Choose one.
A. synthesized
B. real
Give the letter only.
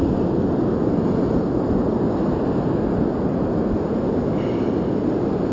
B